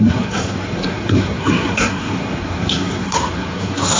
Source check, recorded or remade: remade